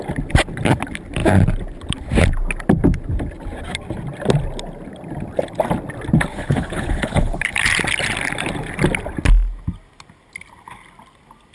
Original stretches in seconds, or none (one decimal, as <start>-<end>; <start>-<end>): 0.0-6.3; 7.7-11.5